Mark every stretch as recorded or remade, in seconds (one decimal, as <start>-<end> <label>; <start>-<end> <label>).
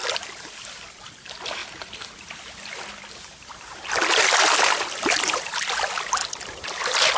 0.0-1.6 recorded; 1.6-5.8 remade; 5.8-6.2 recorded; 6.2-7.2 remade